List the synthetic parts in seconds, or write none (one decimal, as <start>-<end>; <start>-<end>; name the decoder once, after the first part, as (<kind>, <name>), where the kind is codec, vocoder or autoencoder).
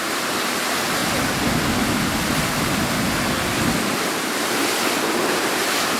0.0-1.0 (vocoder, BigVGAN v2); 4.0-4.6; 5.6-6.0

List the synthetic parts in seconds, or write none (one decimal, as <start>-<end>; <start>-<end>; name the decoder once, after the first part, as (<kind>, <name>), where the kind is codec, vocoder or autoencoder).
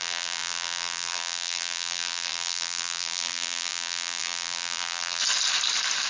0.0-5.2 (vocoder, BigVGAN v2)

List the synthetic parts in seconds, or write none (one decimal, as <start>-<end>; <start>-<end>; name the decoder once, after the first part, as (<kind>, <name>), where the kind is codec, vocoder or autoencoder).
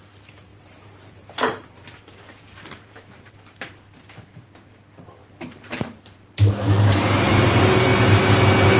0.5-3.3 (vocoder, BigVGAN v2); 5.2-7.6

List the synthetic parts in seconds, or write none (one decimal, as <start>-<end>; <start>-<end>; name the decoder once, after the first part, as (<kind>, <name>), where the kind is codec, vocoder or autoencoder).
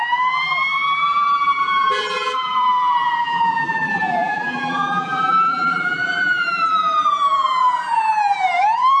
0.0-9.0 (vocoder, BigVGAN v2)